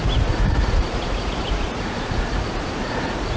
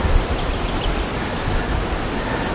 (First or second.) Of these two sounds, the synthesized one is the first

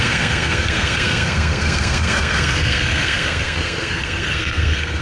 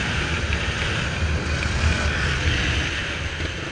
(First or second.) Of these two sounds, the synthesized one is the first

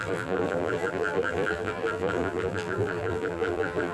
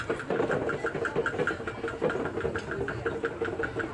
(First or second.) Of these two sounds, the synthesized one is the first